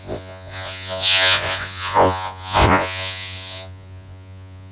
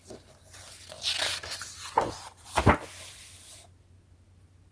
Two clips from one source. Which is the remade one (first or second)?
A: first